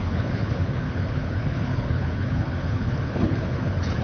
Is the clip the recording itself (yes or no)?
no